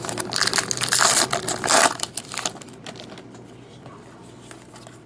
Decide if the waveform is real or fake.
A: real